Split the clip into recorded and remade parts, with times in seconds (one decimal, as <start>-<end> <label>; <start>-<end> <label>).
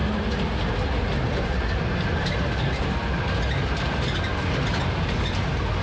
0.0-5.8 recorded